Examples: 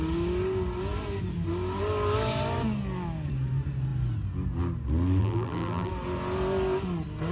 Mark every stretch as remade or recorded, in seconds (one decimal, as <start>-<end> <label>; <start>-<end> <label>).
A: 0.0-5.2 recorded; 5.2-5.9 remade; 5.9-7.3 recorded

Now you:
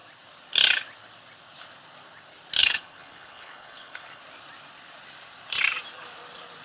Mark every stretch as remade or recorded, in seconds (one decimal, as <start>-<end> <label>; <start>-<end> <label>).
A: 0.0-2.6 recorded; 2.6-4.2 remade; 4.2-6.6 recorded

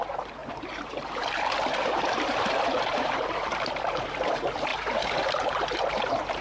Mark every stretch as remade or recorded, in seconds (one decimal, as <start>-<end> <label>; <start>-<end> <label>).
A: 0.0-6.4 remade

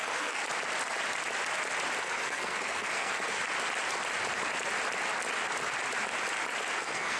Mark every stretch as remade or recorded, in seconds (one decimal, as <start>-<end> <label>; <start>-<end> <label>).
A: 0.0-0.4 remade; 0.4-2.0 recorded; 2.0-3.4 remade; 3.4-6.8 recorded; 6.8-7.2 remade